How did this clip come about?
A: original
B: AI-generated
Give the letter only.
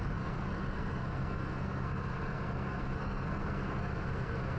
B